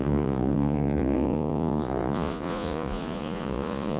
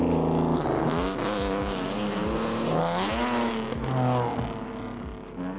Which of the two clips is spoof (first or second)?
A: first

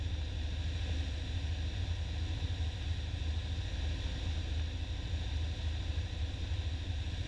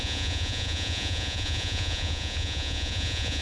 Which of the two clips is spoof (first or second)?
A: second